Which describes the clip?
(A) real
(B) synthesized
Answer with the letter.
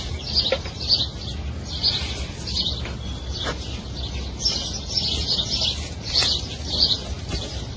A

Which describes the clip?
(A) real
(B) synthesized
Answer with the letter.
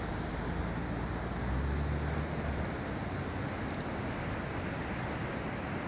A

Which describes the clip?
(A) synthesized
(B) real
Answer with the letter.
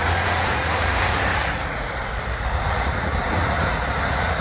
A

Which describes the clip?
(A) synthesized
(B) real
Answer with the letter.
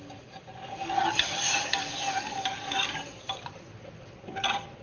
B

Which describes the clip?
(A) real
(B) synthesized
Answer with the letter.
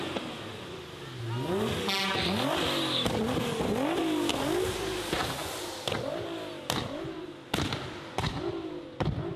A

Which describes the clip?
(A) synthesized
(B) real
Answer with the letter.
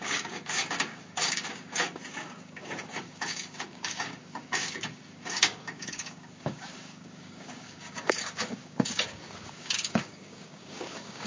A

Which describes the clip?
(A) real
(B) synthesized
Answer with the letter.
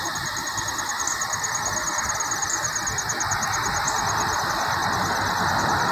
A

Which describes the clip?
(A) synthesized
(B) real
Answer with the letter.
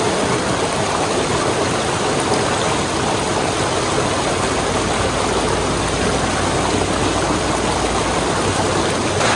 B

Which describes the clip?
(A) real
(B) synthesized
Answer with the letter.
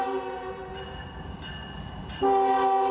A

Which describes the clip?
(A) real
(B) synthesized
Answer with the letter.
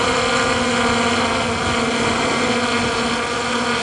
A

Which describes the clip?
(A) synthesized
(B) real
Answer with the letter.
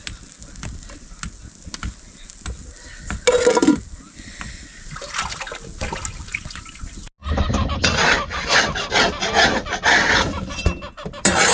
B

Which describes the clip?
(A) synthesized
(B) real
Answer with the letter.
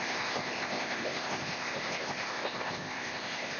A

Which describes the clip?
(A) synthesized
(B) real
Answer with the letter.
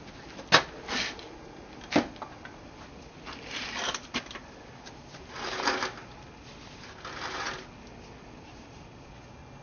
B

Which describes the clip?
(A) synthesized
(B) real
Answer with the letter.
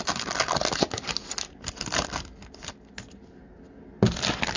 B